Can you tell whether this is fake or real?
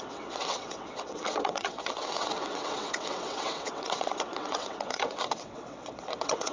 fake